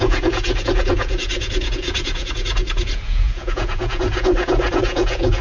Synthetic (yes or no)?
yes